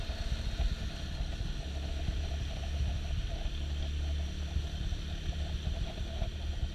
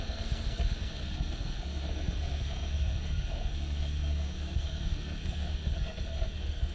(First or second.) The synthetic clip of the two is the second